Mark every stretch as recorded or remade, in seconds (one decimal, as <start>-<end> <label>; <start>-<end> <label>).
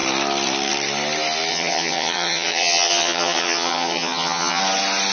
0.0-1.5 recorded; 1.5-4.6 remade; 4.6-5.1 recorded